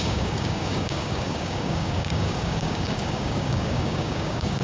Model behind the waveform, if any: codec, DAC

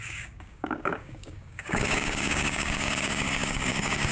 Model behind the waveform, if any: codec, DAC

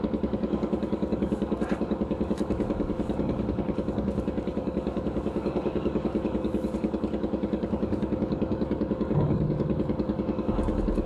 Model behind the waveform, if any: codec, DAC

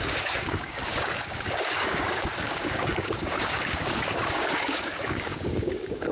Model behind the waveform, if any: codec, DAC